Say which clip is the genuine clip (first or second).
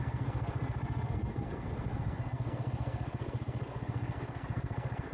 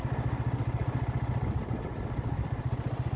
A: second